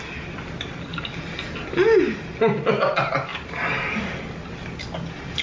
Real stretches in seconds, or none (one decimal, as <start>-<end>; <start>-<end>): 0.0-5.4